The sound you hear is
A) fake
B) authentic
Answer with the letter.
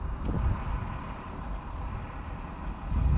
B